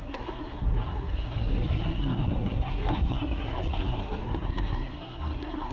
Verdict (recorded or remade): remade